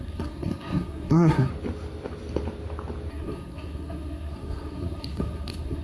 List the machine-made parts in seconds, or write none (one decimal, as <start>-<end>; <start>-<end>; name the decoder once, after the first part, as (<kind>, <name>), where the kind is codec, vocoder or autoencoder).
0.0-1.5 (codec, SNAC); 3.1-5.8